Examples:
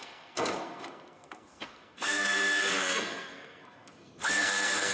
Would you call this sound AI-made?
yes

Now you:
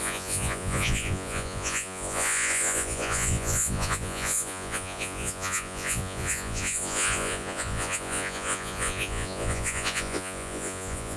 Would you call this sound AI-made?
yes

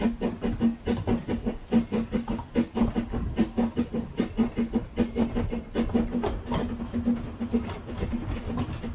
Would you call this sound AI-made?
no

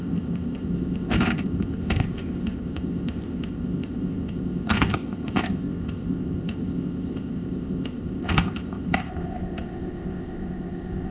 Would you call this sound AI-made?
yes